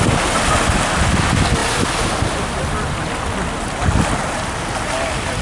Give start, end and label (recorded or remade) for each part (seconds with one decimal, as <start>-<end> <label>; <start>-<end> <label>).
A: 0.0-5.4 recorded